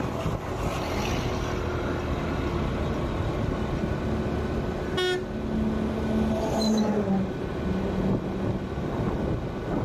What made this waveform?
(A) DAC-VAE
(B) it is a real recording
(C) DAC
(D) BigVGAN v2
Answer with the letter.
B